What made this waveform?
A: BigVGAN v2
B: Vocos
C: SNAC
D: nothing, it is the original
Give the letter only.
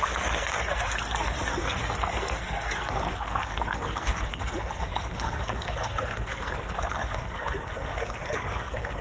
C